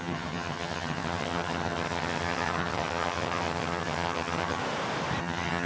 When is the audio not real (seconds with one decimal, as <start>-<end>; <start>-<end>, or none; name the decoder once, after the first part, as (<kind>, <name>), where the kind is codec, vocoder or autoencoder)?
0.0-4.6 (vocoder, HiFi-GAN); 5.2-5.7